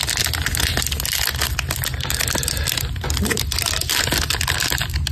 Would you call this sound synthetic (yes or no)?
no